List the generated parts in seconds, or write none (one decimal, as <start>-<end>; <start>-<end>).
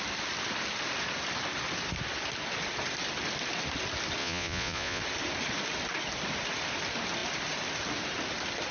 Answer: 4.2-5.0